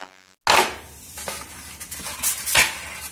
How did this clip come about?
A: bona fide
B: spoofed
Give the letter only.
A